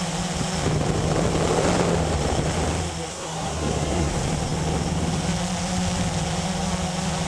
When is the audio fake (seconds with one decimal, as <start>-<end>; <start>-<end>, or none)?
3.1-4.1